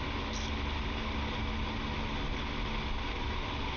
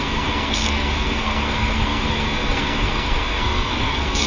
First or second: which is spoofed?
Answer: second